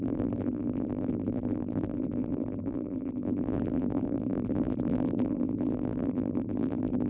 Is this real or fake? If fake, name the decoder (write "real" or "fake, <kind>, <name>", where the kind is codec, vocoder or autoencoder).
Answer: fake, vocoder, BigVGAN v2